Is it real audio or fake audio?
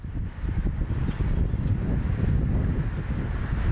real